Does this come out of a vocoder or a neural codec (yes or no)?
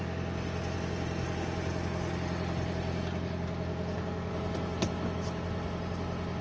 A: no